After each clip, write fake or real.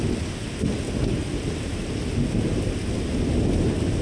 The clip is real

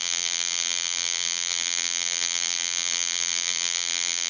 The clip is fake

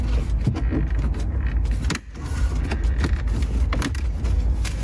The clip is real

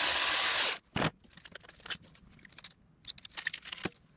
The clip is real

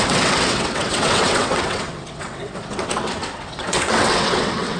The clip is fake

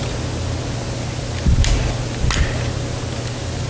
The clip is real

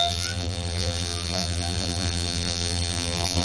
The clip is fake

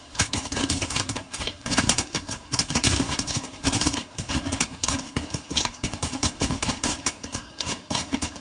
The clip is fake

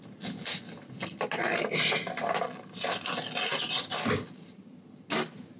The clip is real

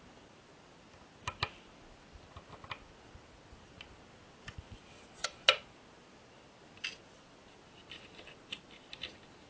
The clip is real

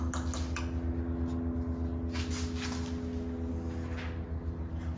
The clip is real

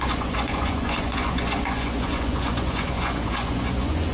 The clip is fake